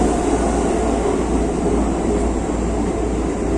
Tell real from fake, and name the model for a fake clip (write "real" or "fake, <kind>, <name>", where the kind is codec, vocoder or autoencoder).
real